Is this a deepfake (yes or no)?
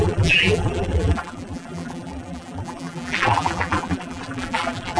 yes